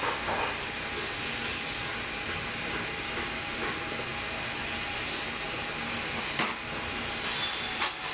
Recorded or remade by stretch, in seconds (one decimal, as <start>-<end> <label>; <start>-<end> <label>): 0.0-8.1 recorded